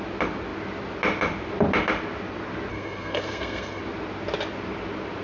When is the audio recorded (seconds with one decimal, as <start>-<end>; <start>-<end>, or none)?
0.0-2.7; 3.8-5.2